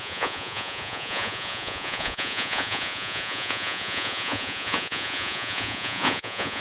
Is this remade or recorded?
remade